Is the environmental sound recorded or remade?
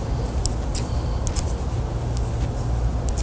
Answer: recorded